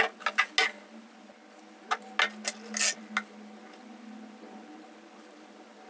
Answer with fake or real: real